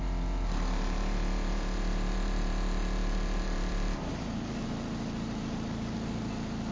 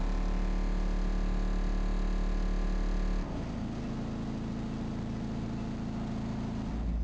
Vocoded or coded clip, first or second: first